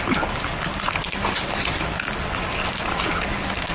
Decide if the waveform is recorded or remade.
recorded